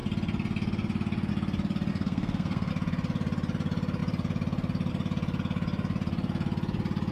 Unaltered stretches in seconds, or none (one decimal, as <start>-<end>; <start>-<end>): 0.0-1.9; 2.7-7.1